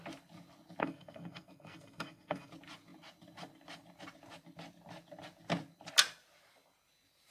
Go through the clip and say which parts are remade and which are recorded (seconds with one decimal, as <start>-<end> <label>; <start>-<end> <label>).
0.0-0.8 recorded; 0.8-2.5 remade; 2.5-7.3 recorded